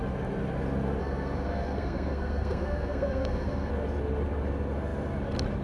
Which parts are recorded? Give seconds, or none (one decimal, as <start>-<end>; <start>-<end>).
0.0-1.0; 3.7-5.6